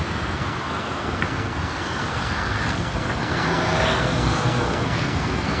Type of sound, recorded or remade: remade